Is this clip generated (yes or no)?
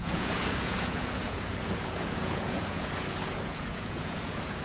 yes